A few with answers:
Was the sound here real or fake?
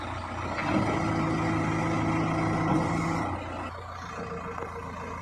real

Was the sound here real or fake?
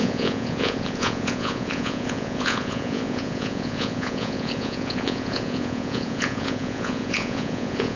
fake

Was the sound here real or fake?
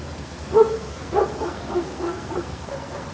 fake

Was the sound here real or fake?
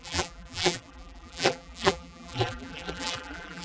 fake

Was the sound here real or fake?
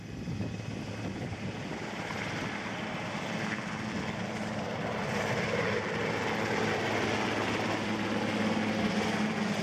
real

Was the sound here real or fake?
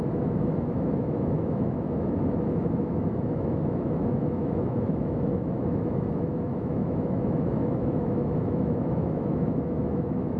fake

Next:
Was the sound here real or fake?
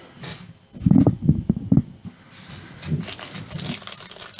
real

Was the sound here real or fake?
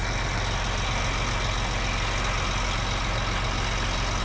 real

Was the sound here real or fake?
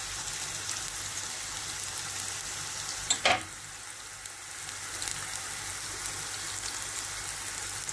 real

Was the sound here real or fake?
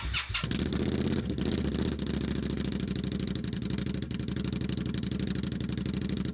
real